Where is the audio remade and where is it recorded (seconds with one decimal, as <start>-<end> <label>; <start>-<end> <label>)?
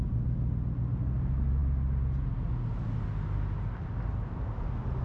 0.0-5.0 recorded